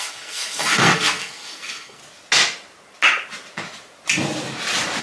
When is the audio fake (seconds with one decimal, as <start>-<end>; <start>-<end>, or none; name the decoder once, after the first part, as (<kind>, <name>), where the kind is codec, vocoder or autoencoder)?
0.0-2.0 (codec, SNAC)